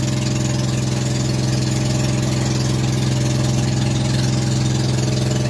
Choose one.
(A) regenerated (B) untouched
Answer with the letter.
B